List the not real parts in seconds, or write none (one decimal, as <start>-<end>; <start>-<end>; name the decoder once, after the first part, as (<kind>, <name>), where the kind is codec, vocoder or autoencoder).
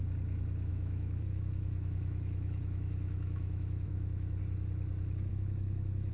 0.7-4.4 (autoencoder, DAC-VAE); 5.3-6.1